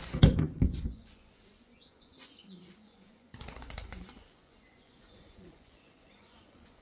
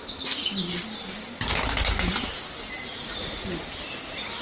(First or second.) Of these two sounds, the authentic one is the second